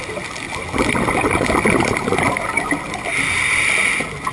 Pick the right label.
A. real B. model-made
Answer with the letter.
A